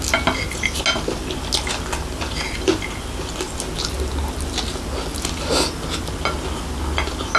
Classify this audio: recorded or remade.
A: recorded